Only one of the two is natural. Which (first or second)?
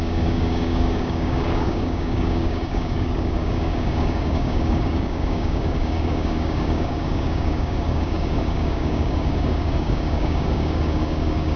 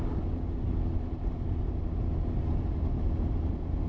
second